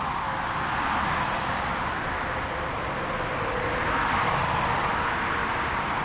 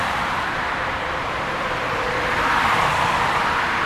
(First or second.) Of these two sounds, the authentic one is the first